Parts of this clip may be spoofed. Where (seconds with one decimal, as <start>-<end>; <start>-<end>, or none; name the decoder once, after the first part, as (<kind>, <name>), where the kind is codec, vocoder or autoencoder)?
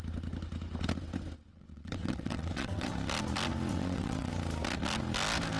1.5-2.9 (vocoder, WaveNeXt); 3.7-4.3